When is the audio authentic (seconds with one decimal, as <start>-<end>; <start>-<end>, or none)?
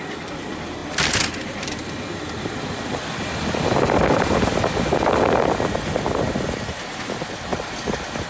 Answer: 0.0-8.3